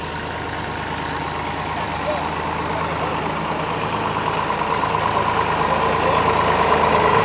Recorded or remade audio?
recorded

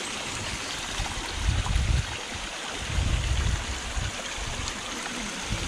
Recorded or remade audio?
recorded